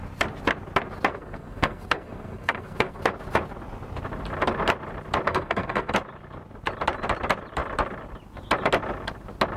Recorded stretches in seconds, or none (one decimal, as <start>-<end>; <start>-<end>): 0.0-1.1; 3.0-5.3; 5.9-9.6